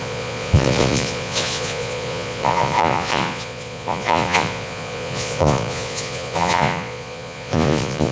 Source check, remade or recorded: remade